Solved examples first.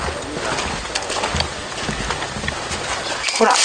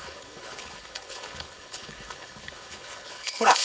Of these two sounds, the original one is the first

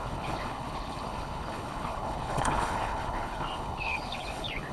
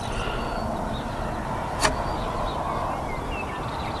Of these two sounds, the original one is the second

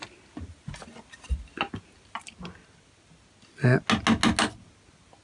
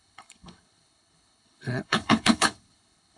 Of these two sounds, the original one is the first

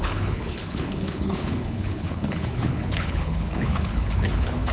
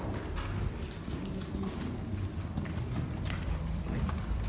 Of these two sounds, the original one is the second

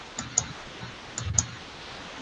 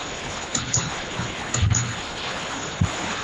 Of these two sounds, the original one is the first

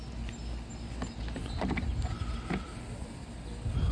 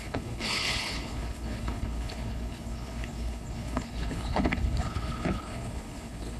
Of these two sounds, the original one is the first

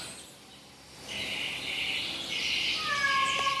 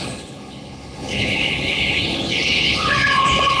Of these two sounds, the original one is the first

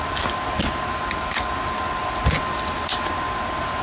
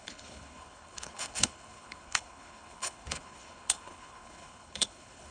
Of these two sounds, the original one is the first